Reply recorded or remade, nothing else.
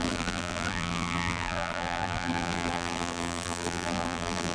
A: remade